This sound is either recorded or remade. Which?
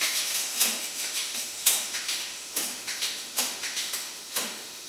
remade